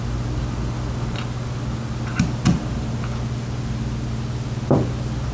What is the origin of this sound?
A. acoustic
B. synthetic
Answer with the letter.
A